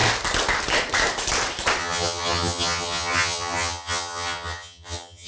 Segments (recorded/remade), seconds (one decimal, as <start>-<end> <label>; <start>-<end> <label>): 0.0-1.8 recorded; 1.8-5.3 remade